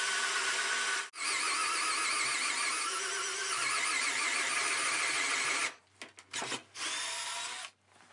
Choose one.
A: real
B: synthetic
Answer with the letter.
A